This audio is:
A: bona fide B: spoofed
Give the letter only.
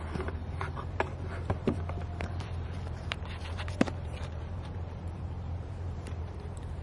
B